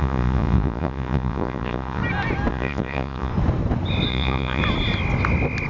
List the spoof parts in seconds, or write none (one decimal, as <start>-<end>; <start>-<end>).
0.0-2.0; 2.5-3.3; 4.1-4.6